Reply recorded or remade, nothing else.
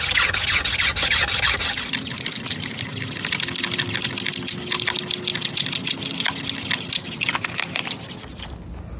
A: recorded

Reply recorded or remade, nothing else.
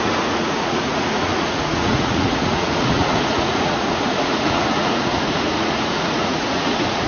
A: remade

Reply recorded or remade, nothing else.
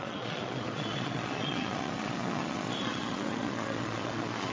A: remade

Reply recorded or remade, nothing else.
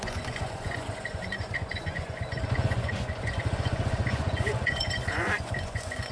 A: remade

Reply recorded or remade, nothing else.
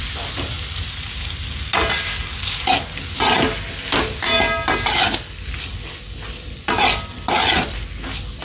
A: recorded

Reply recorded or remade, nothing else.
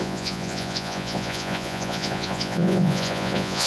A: remade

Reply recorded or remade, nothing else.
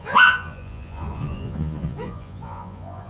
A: remade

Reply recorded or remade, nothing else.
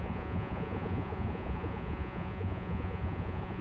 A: remade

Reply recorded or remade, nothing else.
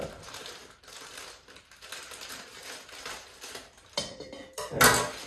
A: recorded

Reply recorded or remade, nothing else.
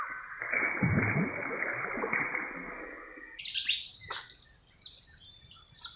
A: recorded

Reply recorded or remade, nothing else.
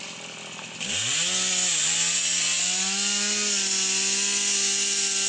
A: recorded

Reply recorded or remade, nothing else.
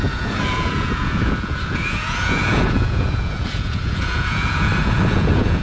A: remade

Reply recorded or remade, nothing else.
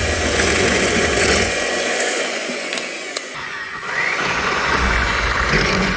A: remade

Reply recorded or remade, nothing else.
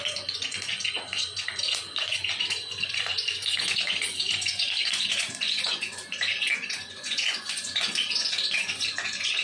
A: remade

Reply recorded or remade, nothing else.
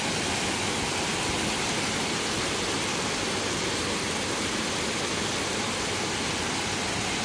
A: recorded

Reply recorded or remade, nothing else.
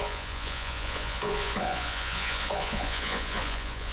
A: remade